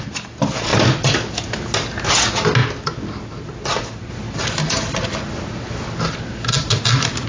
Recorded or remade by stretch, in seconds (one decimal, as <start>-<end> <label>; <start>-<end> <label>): 0.0-7.3 recorded